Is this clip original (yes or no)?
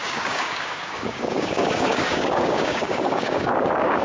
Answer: no